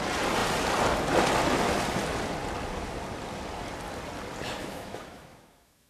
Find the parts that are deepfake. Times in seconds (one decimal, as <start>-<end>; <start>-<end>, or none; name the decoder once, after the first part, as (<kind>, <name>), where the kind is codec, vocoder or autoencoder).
4.6-5.9 (autoencoder, DAC-VAE)